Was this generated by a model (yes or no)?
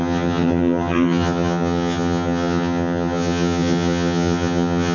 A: yes